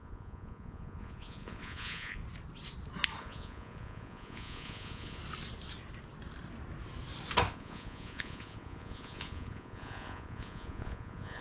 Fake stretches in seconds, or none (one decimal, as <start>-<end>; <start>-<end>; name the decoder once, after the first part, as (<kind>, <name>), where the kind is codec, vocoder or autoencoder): 0.0-2.2 (vocoder, Vocos); 3.2-5.2; 7.5-11.4